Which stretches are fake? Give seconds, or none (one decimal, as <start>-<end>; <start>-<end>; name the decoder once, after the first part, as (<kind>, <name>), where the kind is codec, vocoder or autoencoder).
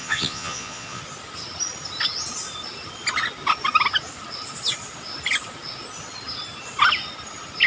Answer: 0.0-1.0 (vocoder, Vocos)